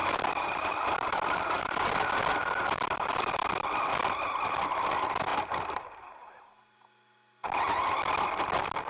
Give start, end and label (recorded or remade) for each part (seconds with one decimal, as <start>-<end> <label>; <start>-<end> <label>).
0.0-1.9 remade; 1.9-5.3 recorded; 5.3-6.5 remade; 6.5-8.9 recorded